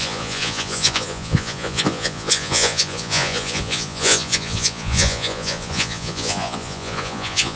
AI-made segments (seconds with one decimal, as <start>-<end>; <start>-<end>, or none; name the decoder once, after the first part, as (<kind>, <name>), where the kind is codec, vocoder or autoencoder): 0.0-7.6 (vocoder, Vocos)